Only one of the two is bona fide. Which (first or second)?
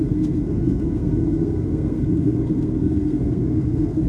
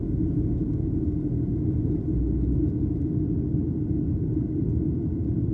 second